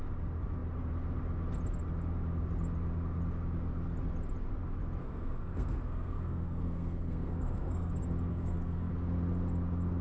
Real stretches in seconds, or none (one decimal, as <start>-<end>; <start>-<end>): 0.0-5.0; 7.9-8.3; 8.9-10.0